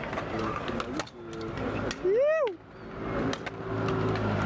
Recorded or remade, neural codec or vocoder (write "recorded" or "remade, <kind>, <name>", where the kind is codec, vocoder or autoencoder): recorded